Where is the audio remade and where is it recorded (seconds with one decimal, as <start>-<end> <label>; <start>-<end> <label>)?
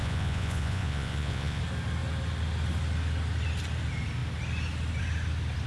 0.0-1.6 remade; 1.6-5.7 recorded